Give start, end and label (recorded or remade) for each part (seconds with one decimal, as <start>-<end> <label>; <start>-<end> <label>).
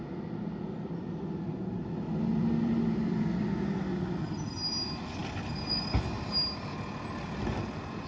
0.0-8.1 recorded